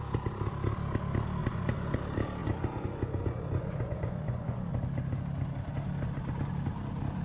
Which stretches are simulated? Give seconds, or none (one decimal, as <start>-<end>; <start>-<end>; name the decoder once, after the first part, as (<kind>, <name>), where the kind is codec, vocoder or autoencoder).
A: 1.4-2.0 (vocoder, Vocos); 2.4-4.7